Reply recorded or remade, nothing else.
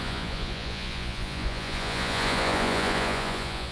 remade